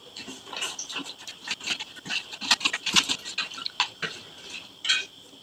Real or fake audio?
real